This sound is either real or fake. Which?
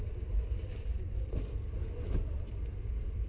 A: real